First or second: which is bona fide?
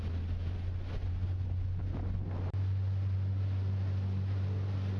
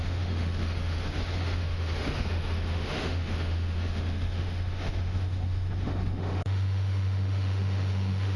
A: first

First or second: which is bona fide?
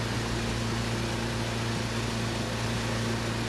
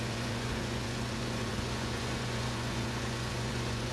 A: first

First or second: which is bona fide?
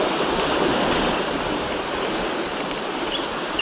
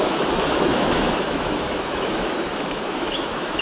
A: first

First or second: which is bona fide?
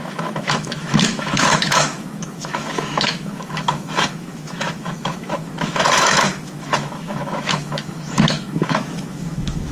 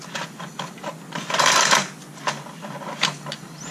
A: second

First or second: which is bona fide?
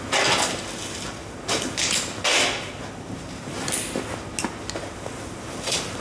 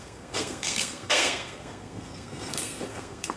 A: first